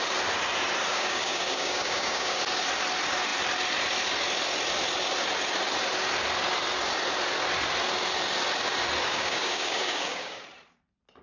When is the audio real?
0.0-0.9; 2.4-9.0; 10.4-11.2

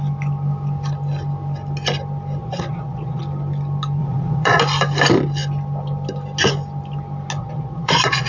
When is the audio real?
0.0-2.4; 3.2-4.0; 4.6-7.4

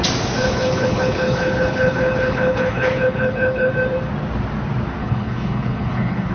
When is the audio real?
0.0-0.4; 3.7-5.0

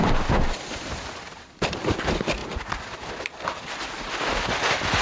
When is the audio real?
0.0-0.7

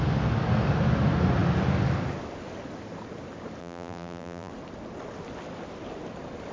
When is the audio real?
0.0-3.6; 4.5-6.5